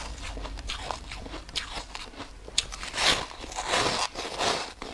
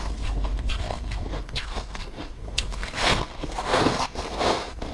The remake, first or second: second